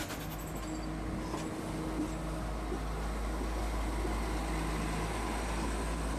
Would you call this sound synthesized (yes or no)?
no